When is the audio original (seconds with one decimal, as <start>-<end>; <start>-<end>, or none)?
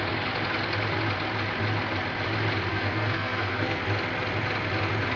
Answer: 0.0-2.7; 3.8-5.2